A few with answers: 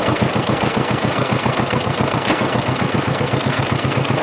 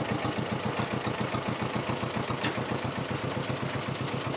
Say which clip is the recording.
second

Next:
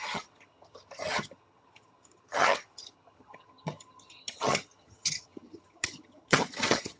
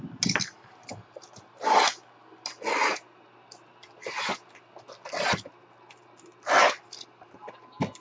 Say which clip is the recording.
second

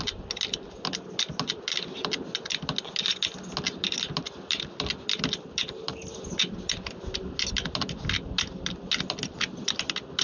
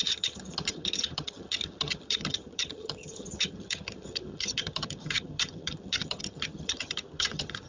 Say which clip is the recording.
first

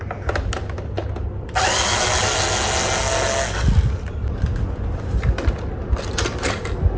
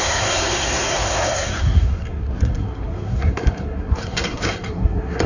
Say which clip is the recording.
first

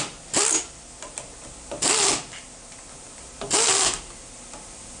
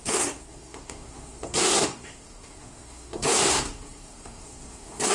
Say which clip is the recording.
first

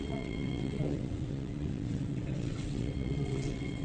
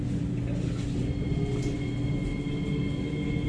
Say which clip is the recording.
second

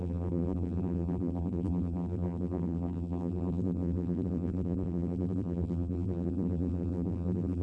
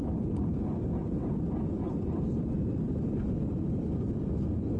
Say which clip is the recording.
second